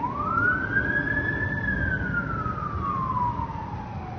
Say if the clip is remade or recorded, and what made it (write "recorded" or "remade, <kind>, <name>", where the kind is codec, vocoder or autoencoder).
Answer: recorded